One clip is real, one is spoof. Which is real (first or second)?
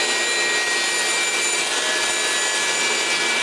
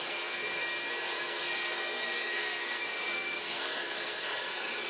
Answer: first